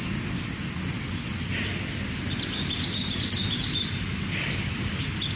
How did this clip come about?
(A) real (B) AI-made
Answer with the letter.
A